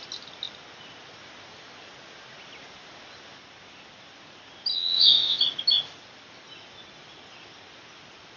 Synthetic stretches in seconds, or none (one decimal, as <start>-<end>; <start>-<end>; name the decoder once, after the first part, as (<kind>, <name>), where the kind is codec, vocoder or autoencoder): 4.7-5.4 (vocoder, WaveNeXt)